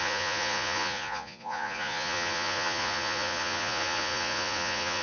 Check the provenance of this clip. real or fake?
fake